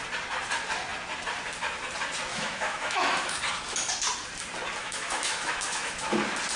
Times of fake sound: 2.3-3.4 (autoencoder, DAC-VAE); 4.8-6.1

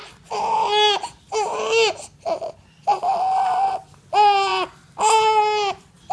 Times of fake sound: none